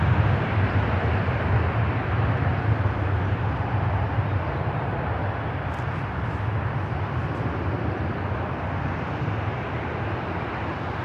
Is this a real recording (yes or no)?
yes